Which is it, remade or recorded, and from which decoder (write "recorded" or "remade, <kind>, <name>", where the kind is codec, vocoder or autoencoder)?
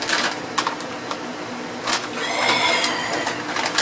recorded